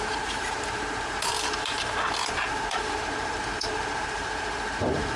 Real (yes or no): no